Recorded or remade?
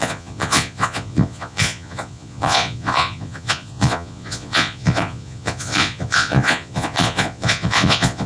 remade